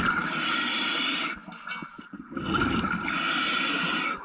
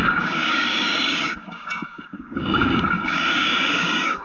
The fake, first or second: second